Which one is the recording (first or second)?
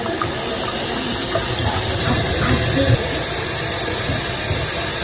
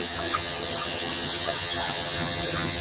first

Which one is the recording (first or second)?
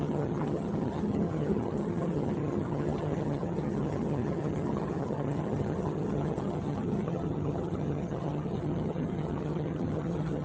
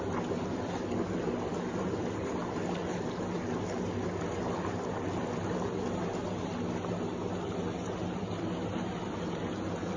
second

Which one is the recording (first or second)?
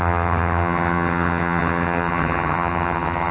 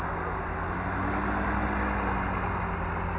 second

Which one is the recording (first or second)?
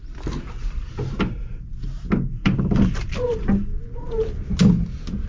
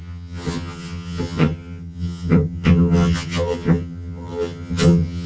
first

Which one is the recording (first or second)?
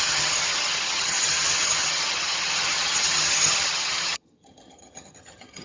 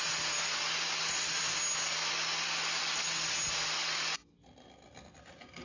second